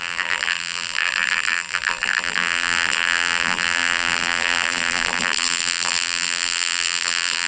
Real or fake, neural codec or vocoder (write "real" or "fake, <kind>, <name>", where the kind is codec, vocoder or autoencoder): fake, vocoder, BigVGAN v2